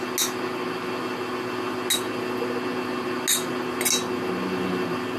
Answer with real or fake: real